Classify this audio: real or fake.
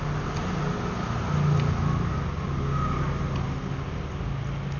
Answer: real